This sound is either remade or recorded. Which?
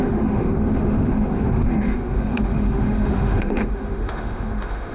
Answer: remade